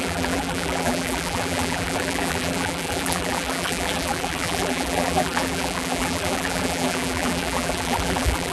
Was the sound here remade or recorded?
remade